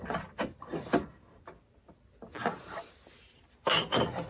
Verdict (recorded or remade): recorded